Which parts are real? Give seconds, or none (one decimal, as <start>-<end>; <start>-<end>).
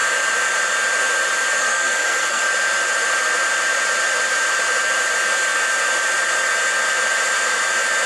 0.0-1.6; 2.4-8.1